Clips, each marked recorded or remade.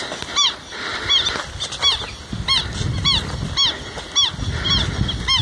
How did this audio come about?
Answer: recorded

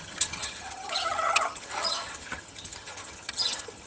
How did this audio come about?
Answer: remade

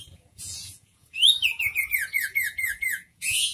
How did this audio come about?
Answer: remade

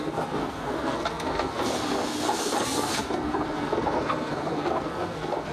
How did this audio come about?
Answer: remade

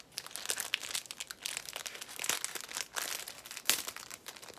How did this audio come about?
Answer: recorded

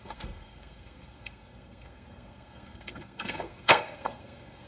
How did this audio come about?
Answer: remade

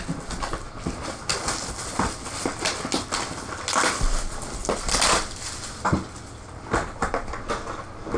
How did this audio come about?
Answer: recorded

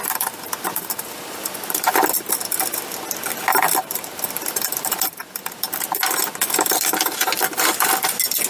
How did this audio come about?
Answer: recorded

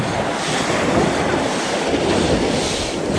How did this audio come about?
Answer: recorded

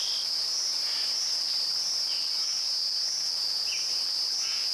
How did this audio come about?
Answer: recorded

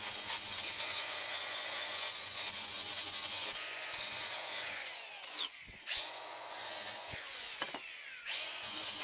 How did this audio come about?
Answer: remade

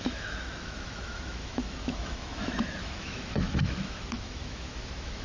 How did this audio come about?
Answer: remade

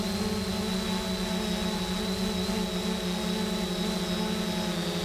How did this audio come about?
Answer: recorded